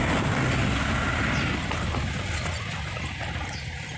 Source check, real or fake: real